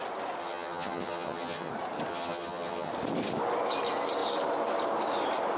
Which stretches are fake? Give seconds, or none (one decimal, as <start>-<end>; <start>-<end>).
0.4-1.7; 2.1-2.9